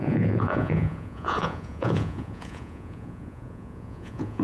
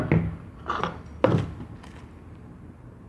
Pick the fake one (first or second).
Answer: first